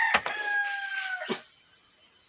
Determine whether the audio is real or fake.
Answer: real